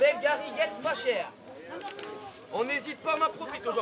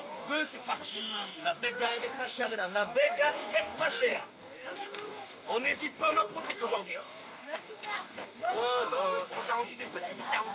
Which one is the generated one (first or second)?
second